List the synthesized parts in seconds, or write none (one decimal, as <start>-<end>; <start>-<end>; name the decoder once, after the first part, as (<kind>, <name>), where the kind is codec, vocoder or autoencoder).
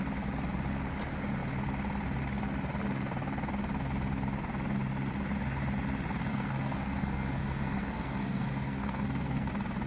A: 6.3-9.5 (codec, SNAC)